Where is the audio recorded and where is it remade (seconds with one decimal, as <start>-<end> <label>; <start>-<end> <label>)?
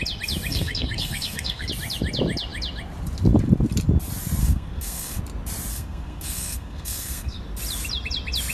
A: 0.0-0.5 recorded; 0.5-1.7 remade; 1.7-4.4 recorded; 4.4-5.2 remade; 5.2-5.7 recorded; 5.7-7.4 remade; 7.4-8.5 recorded